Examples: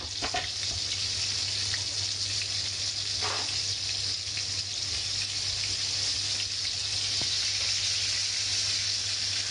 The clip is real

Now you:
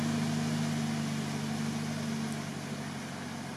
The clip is real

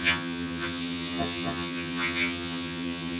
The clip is fake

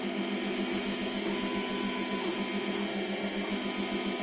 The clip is real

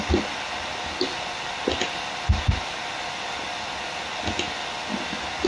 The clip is real